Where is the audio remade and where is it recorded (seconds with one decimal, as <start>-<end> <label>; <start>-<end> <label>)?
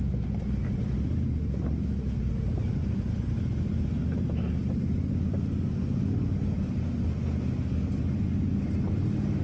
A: 0.0-9.4 recorded